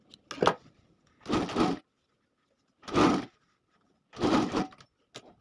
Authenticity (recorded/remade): recorded